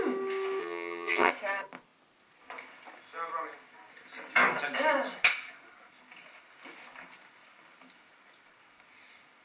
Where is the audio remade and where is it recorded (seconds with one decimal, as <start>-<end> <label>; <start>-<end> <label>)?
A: 0.0-0.6 recorded; 0.6-1.3 remade; 1.3-9.4 recorded